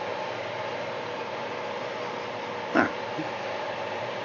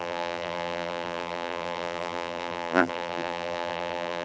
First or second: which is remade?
second